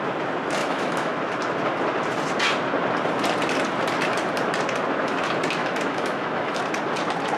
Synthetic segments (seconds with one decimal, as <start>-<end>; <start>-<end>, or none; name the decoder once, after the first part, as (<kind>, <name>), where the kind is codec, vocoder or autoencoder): 0.6-1.2 (autoencoder, DAC-VAE); 5.6-6.6

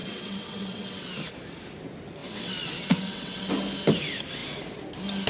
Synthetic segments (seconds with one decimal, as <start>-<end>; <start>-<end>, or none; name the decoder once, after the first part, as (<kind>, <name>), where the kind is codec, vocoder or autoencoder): 0.0-1.1 (vocoder, WaveNeXt); 2.2-3.5

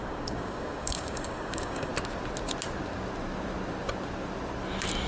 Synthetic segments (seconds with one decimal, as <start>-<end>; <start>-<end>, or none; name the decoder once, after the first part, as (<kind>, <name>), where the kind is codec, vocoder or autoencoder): 0.0-1.9 (codec, DAC)

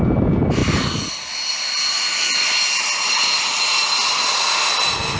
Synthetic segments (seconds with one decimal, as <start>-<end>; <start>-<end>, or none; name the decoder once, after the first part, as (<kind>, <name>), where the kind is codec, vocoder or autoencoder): none

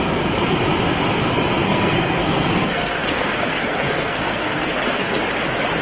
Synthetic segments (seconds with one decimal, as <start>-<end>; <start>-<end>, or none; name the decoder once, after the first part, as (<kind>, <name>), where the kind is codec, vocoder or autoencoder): 1.6-5.1 (codec, SNAC)

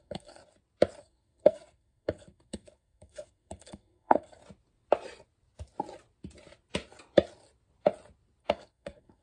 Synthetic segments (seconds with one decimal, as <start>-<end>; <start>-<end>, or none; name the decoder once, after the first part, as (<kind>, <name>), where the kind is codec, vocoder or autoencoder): 0.0-0.4 (codec, SNAC); 1.0-4.4; 8.4-9.2